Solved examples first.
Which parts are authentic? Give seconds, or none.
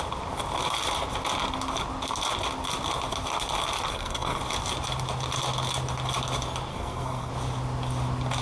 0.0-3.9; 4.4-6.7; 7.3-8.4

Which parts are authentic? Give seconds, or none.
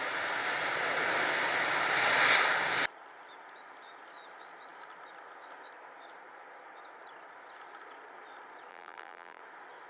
0.0-8.7; 9.4-9.9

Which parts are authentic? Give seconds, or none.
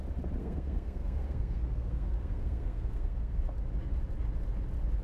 0.0-0.4; 3.4-5.0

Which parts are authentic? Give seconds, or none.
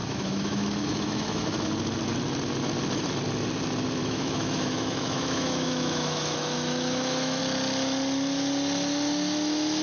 1.7-4.0; 7.4-9.8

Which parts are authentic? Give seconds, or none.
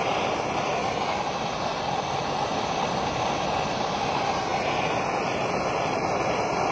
0.0-6.7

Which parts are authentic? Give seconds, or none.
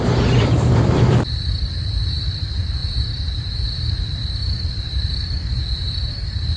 2.8-3.8; 5.6-6.6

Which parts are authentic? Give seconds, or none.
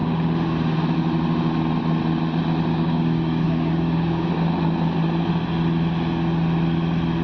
0.0-2.7; 4.3-7.2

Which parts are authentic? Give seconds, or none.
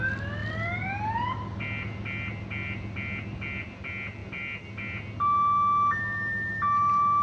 0.0-7.2